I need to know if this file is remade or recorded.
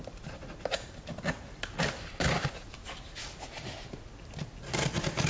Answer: recorded